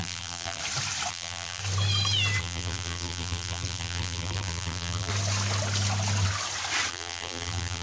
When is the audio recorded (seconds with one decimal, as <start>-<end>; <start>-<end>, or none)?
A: 0.6-1.1; 1.6-2.4; 5.1-6.9